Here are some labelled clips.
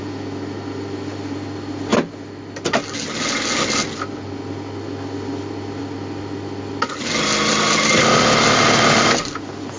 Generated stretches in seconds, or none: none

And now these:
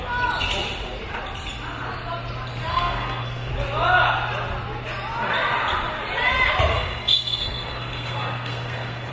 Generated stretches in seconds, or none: 2.7-3.5 (codec, SNAC); 6.7-9.1

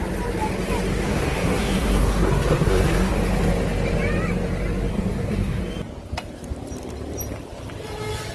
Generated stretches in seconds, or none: 0.9-3.1 (codec, SNAC); 4.9-5.6

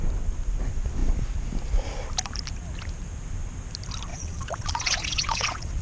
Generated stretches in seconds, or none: 4.1-5.8 (vocoder, Vocos)

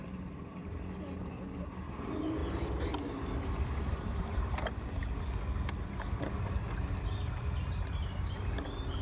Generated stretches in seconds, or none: 0.0-2.4 (vocoder, BigVGAN v2); 3.8-5.0; 8.0-9.0

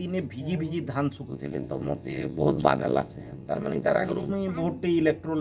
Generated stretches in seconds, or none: 1.3-4.3 (vocoder, WaveNeXt)